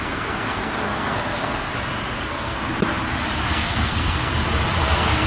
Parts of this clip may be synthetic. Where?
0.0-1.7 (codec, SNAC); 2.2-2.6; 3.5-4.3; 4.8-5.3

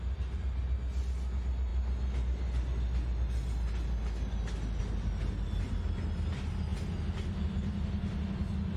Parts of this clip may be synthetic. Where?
none

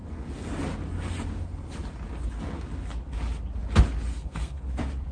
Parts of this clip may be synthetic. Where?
4.1-4.6 (codec, SNAC)